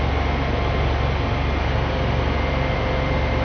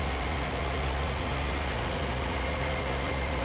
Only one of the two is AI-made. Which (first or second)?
second